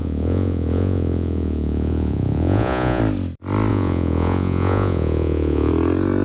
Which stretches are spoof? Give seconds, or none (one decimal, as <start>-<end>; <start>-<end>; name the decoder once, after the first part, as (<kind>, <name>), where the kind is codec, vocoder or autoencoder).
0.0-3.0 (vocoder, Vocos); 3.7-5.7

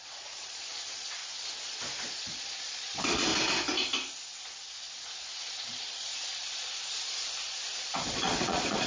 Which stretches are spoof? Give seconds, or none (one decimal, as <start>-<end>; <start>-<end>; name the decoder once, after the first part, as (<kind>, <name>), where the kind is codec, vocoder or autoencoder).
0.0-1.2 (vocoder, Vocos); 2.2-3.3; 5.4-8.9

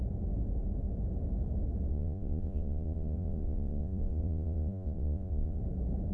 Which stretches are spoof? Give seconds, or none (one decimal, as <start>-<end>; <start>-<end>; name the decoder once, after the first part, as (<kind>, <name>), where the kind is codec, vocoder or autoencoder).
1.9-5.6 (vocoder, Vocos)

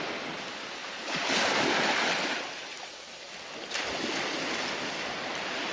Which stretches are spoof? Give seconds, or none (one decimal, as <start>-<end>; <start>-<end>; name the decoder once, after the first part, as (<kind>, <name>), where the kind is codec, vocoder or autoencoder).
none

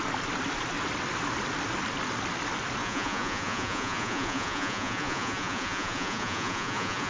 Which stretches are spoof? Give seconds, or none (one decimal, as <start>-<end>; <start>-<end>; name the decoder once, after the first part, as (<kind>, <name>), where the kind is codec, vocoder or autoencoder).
2.8-7.1 (vocoder, Vocos)

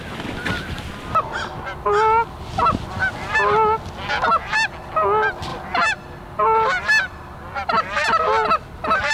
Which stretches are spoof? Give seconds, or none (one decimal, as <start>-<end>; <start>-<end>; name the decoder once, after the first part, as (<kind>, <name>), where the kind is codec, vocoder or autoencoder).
none